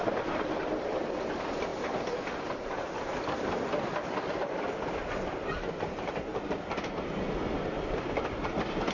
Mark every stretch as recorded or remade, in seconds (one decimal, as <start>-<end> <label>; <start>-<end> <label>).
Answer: 0.0-8.9 recorded